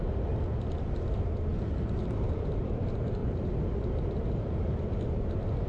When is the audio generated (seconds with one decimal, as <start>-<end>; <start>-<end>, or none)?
1.5-2.8; 3.2-5.0